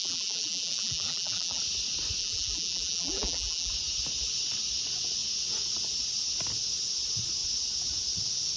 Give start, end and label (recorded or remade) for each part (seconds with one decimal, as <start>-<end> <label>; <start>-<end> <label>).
0.0-1.6 remade; 1.6-2.2 recorded; 2.2-3.7 remade; 3.7-8.6 recorded